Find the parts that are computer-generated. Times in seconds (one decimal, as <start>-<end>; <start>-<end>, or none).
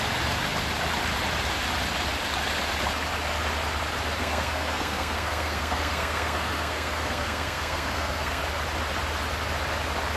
4.2-8.4